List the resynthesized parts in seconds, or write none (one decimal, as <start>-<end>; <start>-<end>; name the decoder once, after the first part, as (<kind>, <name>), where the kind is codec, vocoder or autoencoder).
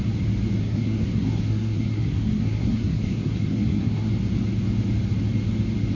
0.6-4.1 (codec, SNAC)